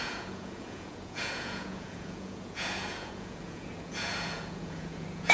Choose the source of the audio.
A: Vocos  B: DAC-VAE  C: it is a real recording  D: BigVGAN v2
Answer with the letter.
A